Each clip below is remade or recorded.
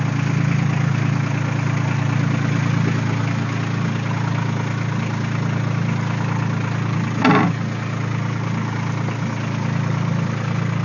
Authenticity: recorded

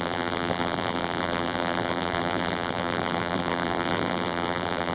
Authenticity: remade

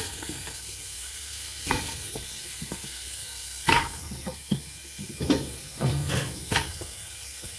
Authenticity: remade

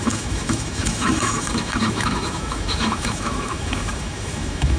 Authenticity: remade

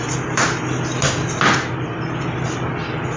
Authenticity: recorded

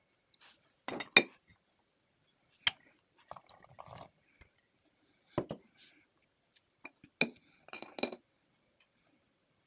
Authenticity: recorded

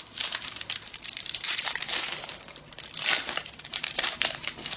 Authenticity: remade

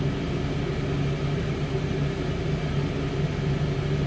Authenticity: recorded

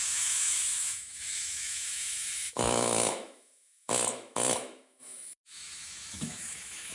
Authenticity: remade